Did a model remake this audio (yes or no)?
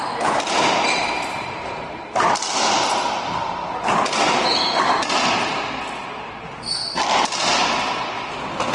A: no